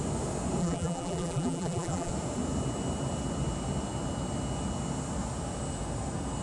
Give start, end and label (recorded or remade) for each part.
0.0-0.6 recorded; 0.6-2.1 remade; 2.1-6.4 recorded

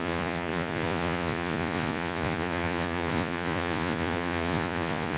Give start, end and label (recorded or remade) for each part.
0.0-5.2 remade

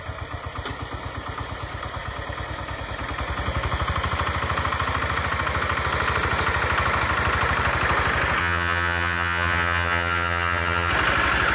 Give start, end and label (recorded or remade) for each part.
0.0-8.4 recorded; 8.4-10.9 remade; 10.9-11.5 recorded

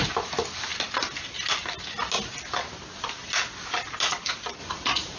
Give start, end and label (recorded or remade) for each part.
0.0-4.6 recorded; 4.6-5.2 remade

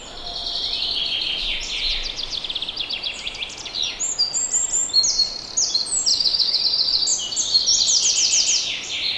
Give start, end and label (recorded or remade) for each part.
0.0-6.1 recorded; 6.1-6.6 remade; 6.6-9.2 recorded

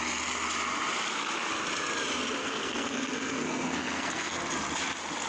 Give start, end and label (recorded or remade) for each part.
0.0-2.4 recorded; 2.4-4.4 remade; 4.4-5.3 recorded

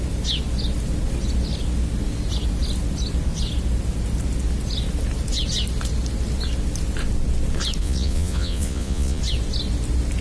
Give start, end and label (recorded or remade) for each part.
0.0-7.8 recorded; 7.8-9.2 remade; 9.2-10.2 recorded

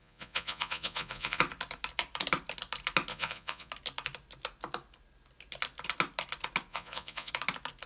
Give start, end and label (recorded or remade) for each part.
0.0-1.4 remade; 1.4-3.1 recorded; 3.1-3.7 remade; 3.7-6.7 recorded; 6.7-7.3 remade; 7.3-7.9 recorded